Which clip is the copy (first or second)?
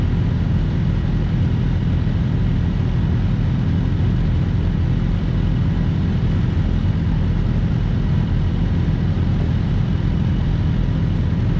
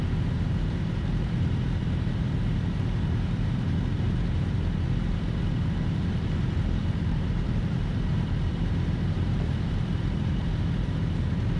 second